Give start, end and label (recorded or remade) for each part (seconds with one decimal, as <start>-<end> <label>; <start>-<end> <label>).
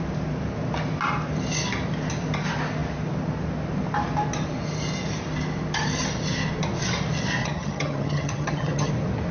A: 0.0-7.4 recorded; 7.4-8.9 remade; 8.9-9.3 recorded